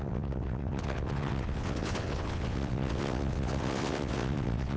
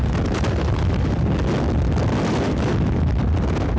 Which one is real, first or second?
second